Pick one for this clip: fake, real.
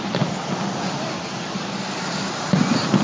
real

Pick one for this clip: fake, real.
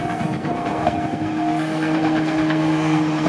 fake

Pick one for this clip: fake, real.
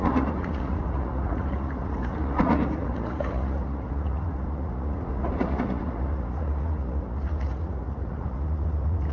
fake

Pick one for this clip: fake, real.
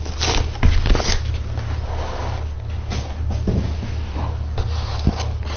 real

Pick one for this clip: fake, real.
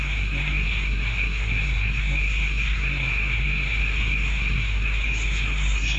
fake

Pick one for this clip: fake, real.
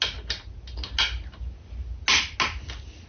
real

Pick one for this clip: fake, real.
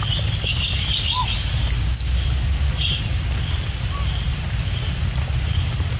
real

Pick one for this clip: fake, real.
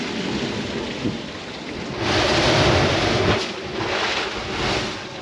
real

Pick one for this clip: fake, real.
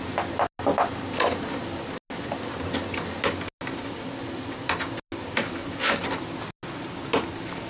real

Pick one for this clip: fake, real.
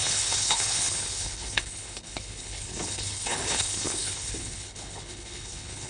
fake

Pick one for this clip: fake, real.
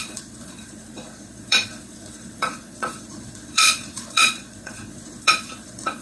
fake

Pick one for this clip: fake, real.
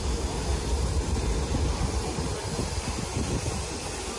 real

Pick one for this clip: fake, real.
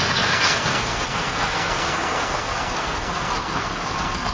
fake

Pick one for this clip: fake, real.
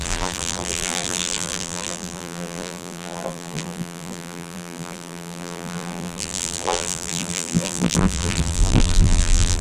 fake